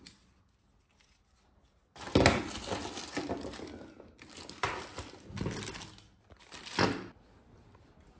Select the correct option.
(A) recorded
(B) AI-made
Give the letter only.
A